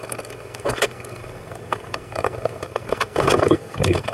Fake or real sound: fake